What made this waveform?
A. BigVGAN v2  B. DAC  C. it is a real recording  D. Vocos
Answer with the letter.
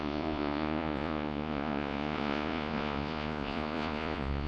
D